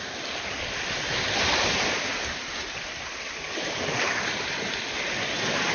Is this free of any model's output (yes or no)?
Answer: yes